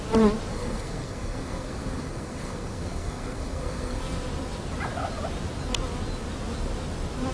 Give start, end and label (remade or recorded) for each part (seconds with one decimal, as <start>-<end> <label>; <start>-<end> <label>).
0.0-0.5 recorded; 0.5-4.0 remade; 4.0-7.3 recorded